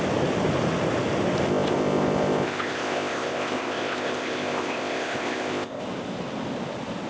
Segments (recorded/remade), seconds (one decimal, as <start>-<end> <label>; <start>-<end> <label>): 0.0-1.5 recorded; 1.5-5.8 remade; 5.8-7.1 recorded